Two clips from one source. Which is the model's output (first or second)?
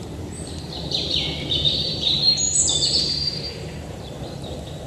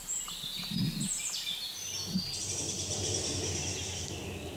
first